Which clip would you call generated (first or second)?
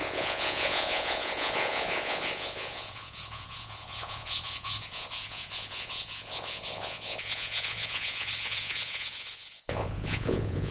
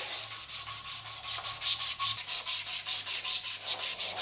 first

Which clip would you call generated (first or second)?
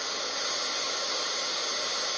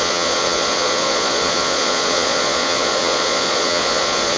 second